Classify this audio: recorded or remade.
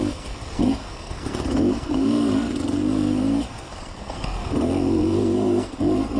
remade